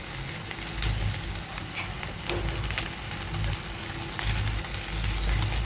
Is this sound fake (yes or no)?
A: no